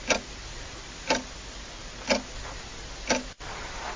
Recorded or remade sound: recorded